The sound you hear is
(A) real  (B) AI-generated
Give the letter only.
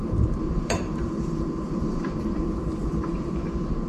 B